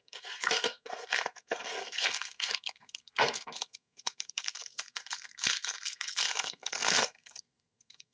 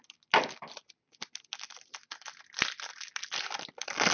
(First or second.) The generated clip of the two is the first